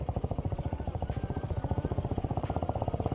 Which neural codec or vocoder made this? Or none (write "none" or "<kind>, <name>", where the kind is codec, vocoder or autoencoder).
vocoder, Vocos